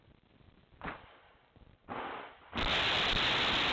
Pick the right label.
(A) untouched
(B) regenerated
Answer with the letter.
A